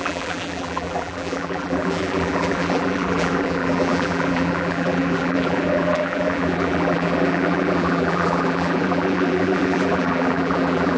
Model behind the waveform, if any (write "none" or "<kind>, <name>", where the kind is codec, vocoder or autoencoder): vocoder, BigVGAN v2